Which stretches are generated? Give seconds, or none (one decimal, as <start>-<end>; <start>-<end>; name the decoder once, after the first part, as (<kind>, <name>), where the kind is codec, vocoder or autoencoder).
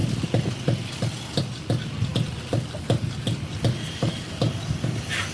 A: none